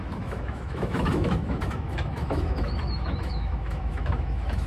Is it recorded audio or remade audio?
remade